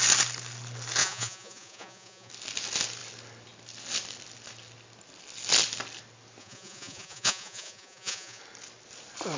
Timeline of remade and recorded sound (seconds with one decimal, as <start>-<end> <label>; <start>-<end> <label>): 0.0-1.0 recorded; 1.0-2.3 remade; 2.3-6.4 recorded; 6.4-8.4 remade; 8.4-9.4 recorded